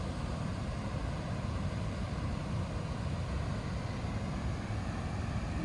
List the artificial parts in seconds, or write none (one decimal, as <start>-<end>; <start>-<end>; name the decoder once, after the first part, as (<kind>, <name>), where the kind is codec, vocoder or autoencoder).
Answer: 0.0-2.4 (vocoder, BigVGAN v2)